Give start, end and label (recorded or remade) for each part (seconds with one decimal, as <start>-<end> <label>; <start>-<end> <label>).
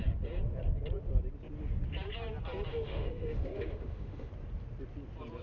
0.0-2.7 recorded; 2.7-4.3 remade; 4.3-5.4 recorded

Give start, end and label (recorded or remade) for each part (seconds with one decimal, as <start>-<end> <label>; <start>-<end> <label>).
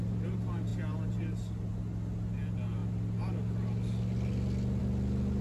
0.0-5.4 recorded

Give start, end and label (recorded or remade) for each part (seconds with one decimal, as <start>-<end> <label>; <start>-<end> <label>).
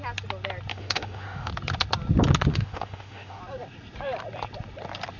0.0-0.7 recorded; 0.7-1.5 remade; 1.5-2.5 recorded; 2.5-3.4 remade; 3.4-5.2 recorded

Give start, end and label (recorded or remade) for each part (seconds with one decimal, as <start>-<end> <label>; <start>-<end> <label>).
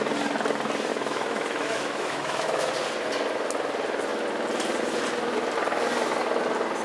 0.0-0.9 recorded; 0.9-2.7 remade; 2.7-6.8 recorded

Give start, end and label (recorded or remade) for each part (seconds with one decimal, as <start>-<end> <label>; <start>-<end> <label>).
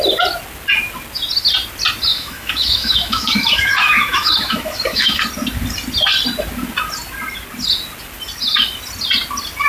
0.0-2.1 recorded; 2.1-5.2 remade; 5.2-9.7 recorded